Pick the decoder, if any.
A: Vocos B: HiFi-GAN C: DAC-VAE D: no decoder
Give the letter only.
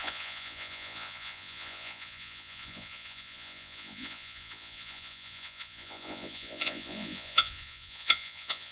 A